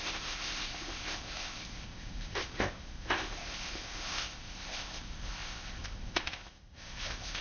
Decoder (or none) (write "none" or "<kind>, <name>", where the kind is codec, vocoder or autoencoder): codec, ZipCodec